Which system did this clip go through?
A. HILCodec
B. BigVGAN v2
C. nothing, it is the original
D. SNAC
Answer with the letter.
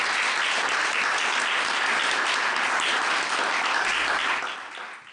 C